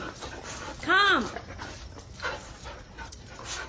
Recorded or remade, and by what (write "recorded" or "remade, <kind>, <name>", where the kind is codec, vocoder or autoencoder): recorded